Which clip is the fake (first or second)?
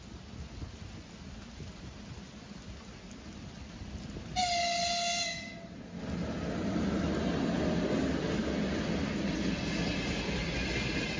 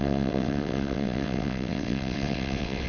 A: second